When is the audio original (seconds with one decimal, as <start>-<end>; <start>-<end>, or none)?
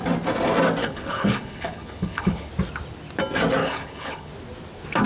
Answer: 0.0-0.8; 2.5-3.6; 4.3-5.1